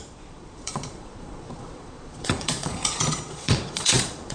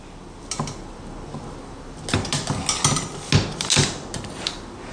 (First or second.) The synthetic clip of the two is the first